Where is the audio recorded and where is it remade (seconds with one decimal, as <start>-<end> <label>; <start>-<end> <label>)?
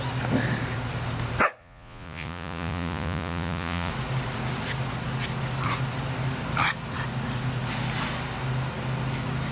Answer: 0.0-1.6 recorded; 1.6-3.9 remade; 3.9-9.5 recorded